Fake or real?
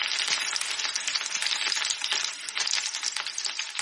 real